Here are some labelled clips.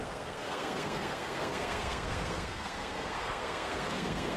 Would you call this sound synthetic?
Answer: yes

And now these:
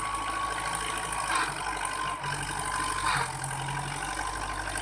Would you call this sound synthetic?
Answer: no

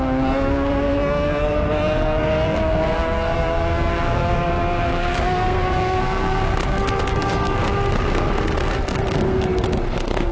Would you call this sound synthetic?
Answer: yes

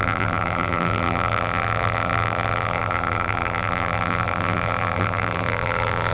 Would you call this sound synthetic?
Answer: yes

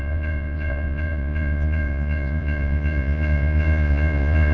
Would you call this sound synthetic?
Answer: yes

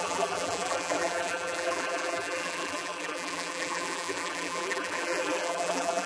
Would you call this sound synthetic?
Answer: yes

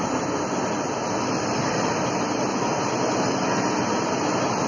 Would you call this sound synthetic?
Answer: no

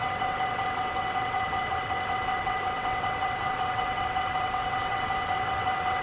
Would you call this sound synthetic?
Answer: yes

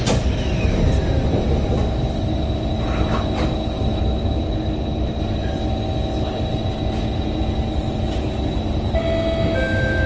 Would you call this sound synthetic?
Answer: no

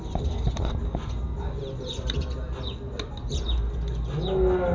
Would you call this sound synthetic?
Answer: no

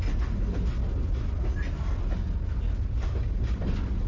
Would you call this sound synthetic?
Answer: no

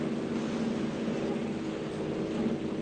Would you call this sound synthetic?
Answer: no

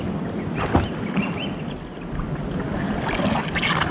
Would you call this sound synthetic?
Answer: no